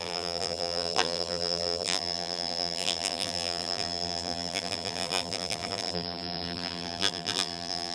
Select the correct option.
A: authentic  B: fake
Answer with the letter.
B